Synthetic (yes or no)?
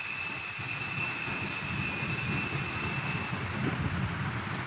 no